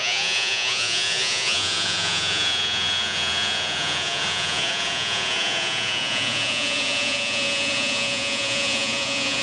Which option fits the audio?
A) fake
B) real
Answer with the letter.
A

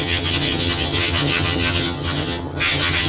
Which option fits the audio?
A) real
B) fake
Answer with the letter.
B